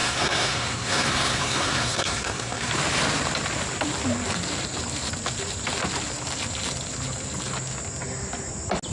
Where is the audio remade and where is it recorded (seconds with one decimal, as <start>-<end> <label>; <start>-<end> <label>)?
0.0-2.7 remade; 2.7-8.9 recorded